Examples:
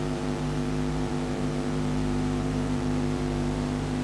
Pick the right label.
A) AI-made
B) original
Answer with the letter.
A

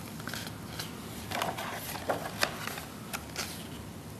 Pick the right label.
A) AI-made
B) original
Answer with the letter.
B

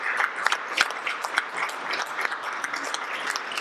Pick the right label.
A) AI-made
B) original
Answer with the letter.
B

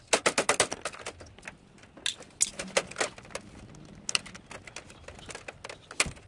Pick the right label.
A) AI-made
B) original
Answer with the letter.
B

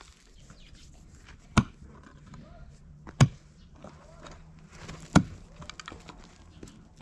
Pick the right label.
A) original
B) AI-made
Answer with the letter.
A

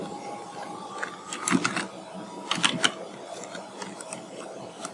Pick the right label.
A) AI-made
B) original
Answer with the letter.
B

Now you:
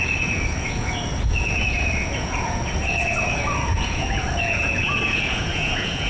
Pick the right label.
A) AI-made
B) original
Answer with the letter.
A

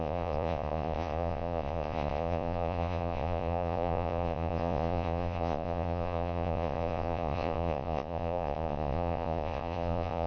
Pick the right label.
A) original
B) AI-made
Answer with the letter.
B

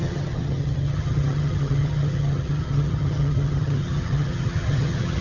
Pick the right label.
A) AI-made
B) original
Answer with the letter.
A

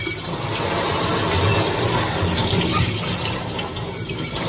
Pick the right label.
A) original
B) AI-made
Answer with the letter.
A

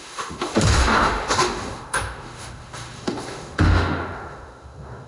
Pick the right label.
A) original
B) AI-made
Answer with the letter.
B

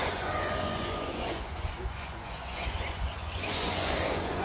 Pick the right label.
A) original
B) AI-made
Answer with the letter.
B